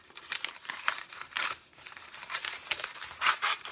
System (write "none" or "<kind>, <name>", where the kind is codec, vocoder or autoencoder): vocoder, BigVGAN v2